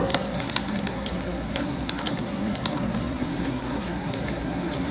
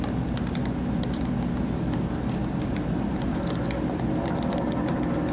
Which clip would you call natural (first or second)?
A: second